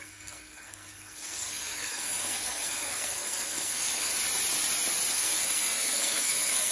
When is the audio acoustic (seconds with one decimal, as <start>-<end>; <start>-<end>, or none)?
4.1-5.1